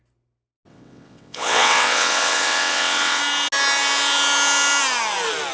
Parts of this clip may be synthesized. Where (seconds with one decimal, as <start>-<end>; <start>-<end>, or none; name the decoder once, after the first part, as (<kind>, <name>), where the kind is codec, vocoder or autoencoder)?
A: 0.7-3.2 (vocoder, WaveNeXt)